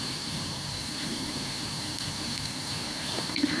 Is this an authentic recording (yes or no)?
no